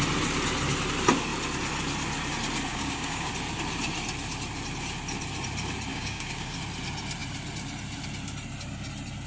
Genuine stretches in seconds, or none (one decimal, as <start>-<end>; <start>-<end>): 0.0-2.7; 3.3-5.9; 6.6-9.3